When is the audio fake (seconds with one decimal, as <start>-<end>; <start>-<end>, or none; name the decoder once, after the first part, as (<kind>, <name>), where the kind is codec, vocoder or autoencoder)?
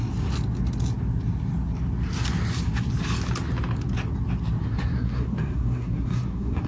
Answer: 4.6-6.7 (codec, SNAC)